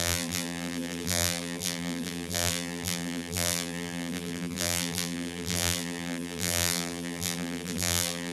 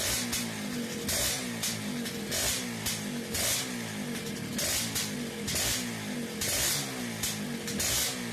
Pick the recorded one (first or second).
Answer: second